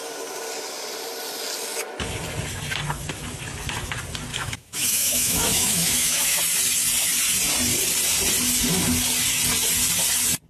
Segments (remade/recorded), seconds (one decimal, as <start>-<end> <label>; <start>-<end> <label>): 0.0-4.3 recorded; 4.3-6.4 remade; 6.4-10.5 recorded